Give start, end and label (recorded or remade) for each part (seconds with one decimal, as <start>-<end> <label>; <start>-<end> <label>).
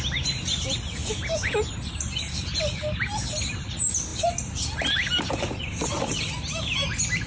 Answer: 0.0-7.3 recorded